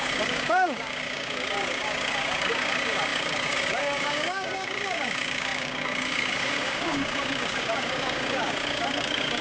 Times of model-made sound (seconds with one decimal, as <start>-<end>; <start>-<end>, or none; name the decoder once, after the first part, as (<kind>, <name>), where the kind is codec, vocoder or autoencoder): 0.0-9.4 (codec, DAC)